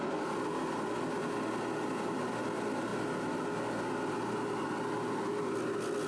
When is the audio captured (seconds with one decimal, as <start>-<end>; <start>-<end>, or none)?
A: 0.0-6.1